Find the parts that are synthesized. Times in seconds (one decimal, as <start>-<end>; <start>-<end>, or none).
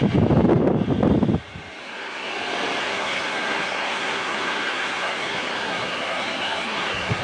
1.8-2.3; 2.8-7.2